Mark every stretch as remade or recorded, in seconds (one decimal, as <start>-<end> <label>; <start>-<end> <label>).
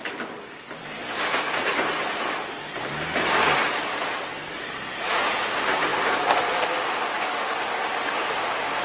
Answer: 0.0-8.8 recorded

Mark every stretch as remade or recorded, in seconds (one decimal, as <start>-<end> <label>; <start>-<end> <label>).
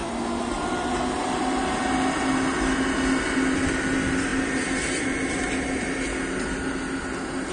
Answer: 0.0-7.5 recorded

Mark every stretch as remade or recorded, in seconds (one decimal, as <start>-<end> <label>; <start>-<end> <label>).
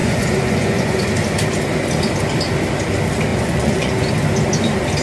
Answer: 0.0-1.0 remade; 1.0-3.3 recorded; 3.3-4.1 remade; 4.1-5.0 recorded